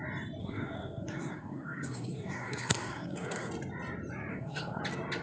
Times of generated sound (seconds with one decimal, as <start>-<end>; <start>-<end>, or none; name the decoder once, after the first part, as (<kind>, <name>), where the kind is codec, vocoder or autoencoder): 0.4-3.5 (codec, SNAC); 4.3-4.8